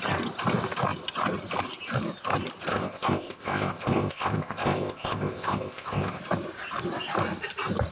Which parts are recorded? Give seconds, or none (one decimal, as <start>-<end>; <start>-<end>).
0.0-2.7; 6.2-7.9